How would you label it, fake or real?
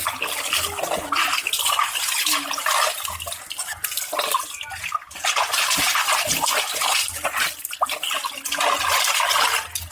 real